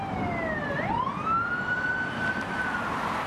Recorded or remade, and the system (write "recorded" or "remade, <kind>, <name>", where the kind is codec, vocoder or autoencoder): recorded